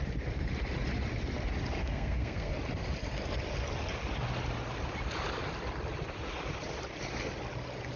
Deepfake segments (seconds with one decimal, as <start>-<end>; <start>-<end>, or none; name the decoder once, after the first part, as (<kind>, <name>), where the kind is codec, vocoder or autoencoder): 1.8-2.5 (codec, SNAC)